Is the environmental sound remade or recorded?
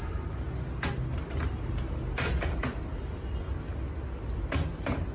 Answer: recorded